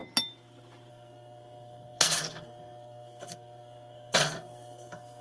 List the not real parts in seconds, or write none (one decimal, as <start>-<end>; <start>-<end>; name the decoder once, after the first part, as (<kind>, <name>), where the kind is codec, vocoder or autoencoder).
0.9-5.2 (codec, SNAC)